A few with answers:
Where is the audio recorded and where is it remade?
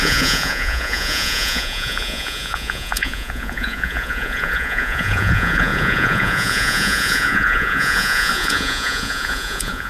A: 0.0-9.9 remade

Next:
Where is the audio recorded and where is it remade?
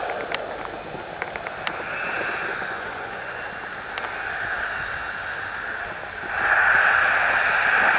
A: 0.0-2.5 recorded; 2.5-3.4 remade; 3.4-8.0 recorded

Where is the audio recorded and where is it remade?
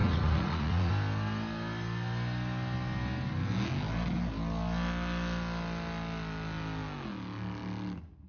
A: 0.0-0.9 remade; 0.9-8.3 recorded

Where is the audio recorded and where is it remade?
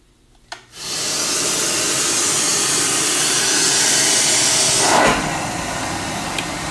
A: 0.0-6.7 recorded